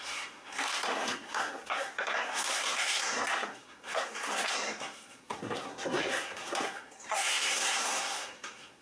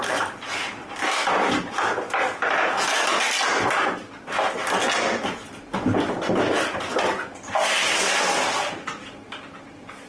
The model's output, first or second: first